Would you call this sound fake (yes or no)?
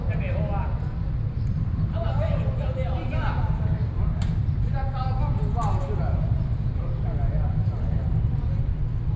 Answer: no